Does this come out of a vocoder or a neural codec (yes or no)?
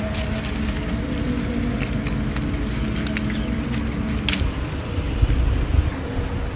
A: no